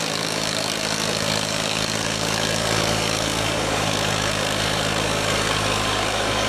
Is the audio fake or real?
fake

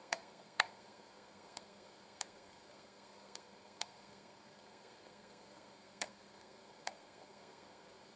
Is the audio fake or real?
fake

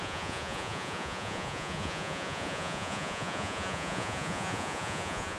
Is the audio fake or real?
fake